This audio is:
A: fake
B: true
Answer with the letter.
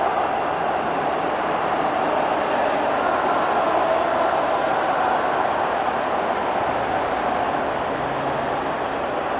B